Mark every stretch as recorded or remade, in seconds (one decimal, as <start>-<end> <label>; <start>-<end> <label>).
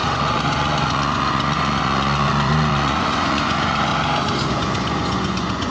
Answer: 0.0-3.9 remade; 3.9-4.5 recorded; 4.5-5.7 remade